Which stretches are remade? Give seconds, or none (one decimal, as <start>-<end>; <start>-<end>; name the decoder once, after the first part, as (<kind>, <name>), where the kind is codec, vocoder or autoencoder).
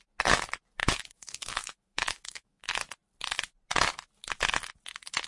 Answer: 0.8-2.6 (autoencoder, DAC-VAE)